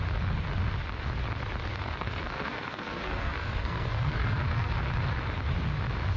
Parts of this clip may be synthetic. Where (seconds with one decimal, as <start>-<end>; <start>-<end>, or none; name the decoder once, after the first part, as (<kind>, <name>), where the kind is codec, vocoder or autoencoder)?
1.7-4.7 (codec, SNAC)